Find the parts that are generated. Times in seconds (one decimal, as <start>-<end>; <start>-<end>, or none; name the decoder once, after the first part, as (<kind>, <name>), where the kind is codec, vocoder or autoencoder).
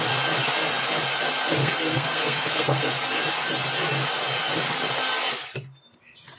1.6-2.9 (codec, SNAC)